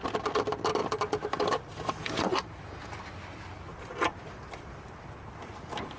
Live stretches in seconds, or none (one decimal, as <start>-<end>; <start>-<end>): 0.0-0.8; 2.8-3.7; 4.9-6.0